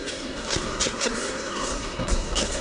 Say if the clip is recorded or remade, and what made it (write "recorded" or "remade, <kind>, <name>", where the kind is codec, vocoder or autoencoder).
remade, codec, SNAC